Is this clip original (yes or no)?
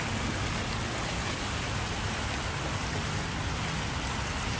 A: yes